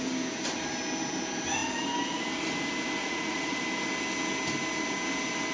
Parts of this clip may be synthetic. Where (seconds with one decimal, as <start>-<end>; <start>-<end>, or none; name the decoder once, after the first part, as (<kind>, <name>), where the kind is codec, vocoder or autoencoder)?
3.0-3.6 (vocoder, Vocos)